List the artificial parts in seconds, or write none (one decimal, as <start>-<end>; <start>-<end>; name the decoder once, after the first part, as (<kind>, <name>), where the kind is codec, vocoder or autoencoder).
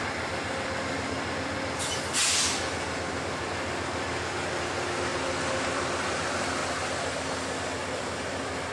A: none